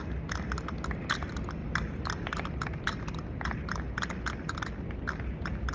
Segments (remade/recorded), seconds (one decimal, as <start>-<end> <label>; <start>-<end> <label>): 0.0-1.6 recorded; 1.6-3.6 remade; 3.6-5.7 recorded